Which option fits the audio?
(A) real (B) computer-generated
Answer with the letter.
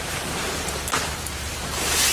B